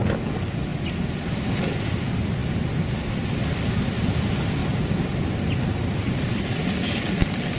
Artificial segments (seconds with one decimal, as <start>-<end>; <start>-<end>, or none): none